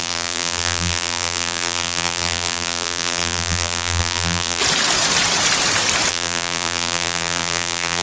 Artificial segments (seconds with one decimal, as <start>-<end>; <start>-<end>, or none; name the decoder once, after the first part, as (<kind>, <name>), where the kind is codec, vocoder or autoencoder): 0.0-4.6 (vocoder, BigVGAN v2); 6.1-8.0